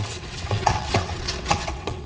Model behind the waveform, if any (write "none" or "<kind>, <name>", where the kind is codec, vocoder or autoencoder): vocoder, WaveNeXt